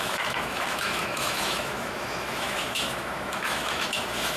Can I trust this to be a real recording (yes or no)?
no